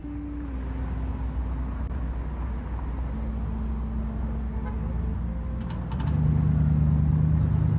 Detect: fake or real real